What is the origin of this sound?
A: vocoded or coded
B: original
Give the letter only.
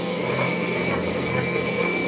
A